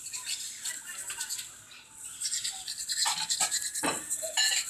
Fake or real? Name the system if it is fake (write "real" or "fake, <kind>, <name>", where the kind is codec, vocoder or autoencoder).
real